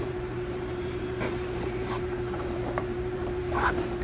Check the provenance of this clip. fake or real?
fake